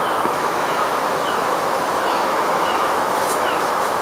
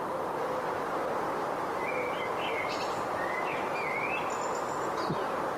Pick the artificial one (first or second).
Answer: first